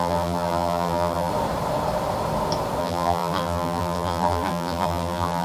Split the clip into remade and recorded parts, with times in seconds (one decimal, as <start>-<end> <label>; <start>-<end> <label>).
0.0-1.3 remade; 1.3-2.8 recorded; 2.8-5.4 remade